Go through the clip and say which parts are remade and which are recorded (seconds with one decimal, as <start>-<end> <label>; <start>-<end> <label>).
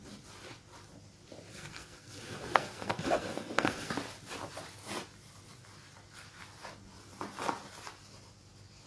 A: 0.0-1.5 recorded; 1.5-3.9 remade; 3.9-8.9 recorded